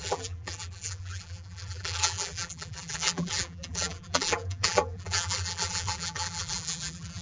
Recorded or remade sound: remade